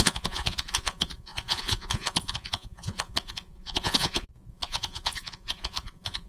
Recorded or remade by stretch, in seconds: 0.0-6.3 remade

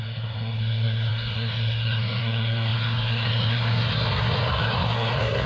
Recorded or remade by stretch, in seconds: 0.0-5.5 remade

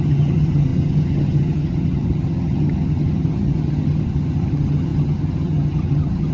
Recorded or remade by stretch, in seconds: 0.0-6.3 remade

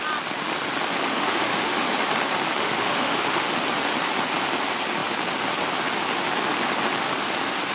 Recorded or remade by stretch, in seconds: 0.0-1.1 recorded; 1.1-1.8 remade; 1.8-2.6 recorded; 2.6-3.5 remade; 3.5-7.7 recorded

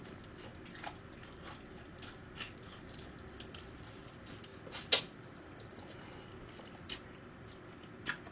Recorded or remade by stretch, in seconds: 0.0-8.3 recorded